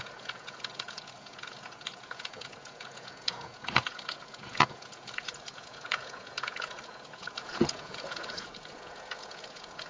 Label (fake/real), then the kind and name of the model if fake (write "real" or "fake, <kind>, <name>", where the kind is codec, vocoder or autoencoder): fake, vocoder, Vocos